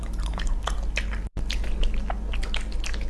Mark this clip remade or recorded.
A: recorded